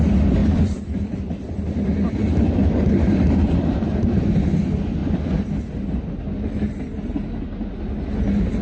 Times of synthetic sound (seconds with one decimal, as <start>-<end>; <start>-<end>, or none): 0.4-4.1